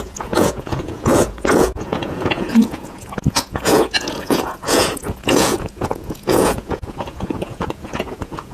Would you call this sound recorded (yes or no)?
no